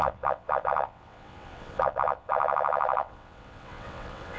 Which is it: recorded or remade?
remade